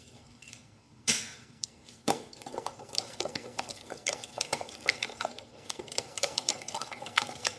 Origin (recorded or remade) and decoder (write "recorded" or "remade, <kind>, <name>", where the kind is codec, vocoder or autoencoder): remade, codec, SNAC